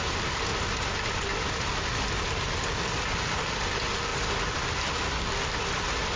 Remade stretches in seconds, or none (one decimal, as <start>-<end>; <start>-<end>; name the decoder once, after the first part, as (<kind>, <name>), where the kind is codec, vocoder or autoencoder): none